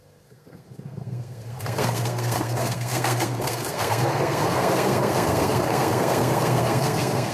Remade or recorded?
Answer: remade